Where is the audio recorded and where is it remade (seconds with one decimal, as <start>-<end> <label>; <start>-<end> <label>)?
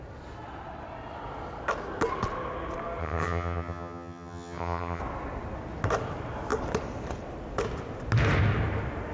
0.0-3.0 recorded; 3.0-5.0 remade; 5.0-9.1 recorded